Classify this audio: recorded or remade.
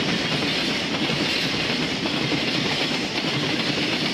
remade